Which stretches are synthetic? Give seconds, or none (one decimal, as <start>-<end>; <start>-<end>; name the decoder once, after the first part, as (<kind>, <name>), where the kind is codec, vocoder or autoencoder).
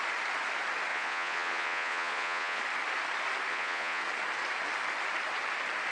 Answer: 0.9-2.6 (vocoder, Vocos); 3.5-4.0